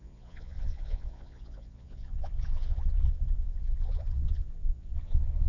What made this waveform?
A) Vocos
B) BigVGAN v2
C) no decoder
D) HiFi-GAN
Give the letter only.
A